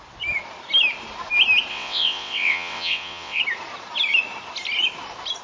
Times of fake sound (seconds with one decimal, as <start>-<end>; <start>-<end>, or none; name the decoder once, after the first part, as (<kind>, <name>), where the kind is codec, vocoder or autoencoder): 1.7-3.4 (vocoder, WaveNeXt)